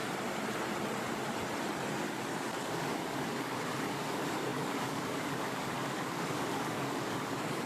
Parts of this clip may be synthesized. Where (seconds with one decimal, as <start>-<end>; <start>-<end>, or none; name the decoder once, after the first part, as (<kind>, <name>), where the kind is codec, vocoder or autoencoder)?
2.4-7.7 (codec, DAC)